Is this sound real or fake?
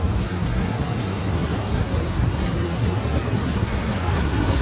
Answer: fake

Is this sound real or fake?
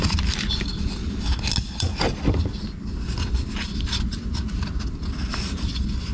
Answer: real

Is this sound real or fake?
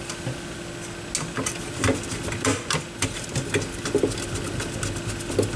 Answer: real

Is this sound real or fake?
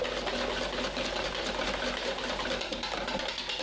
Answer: real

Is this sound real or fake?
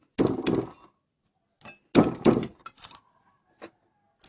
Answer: real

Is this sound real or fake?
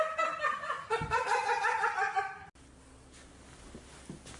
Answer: real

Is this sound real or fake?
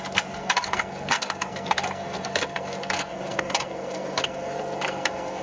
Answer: fake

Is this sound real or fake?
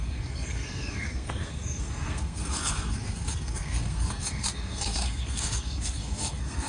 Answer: fake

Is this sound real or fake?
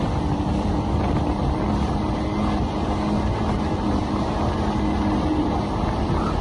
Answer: real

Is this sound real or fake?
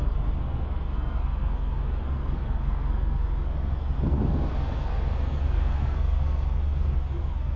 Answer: fake